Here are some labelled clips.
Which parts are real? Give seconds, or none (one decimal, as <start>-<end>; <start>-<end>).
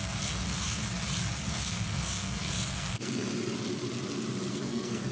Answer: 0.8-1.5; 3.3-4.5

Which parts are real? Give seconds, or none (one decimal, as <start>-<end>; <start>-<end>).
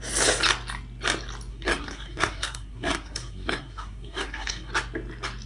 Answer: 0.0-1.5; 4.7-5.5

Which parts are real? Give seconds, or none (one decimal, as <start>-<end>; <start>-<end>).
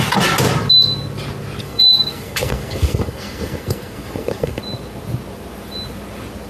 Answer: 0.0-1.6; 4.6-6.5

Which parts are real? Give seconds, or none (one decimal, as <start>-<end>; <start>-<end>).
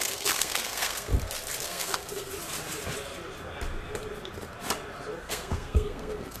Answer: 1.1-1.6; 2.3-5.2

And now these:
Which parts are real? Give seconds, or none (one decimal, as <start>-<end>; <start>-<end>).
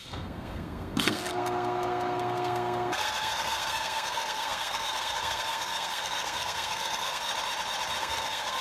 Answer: 7.3-8.0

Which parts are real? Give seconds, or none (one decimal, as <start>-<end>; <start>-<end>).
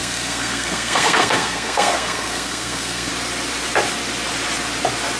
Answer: 3.1-5.2